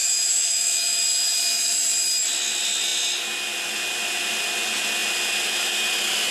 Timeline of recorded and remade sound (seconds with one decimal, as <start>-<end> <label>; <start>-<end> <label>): 0.0-1.0 remade; 1.0-6.3 recorded